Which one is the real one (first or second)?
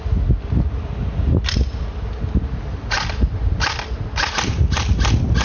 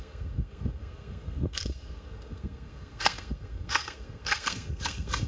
first